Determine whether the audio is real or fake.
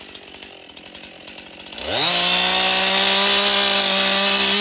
real